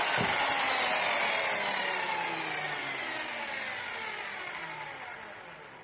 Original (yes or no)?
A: yes